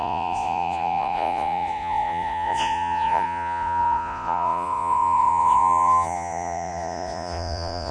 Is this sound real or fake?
fake